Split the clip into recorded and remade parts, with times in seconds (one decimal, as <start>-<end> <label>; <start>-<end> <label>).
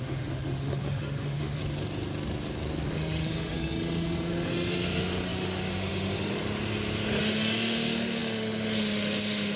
0.0-1.6 remade; 1.6-2.9 recorded; 2.9-6.4 remade; 6.4-7.2 recorded; 7.2-9.6 remade